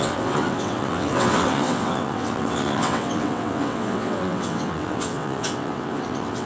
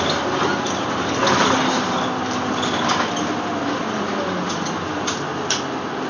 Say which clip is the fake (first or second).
first